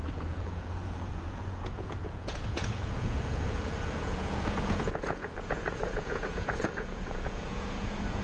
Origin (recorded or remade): remade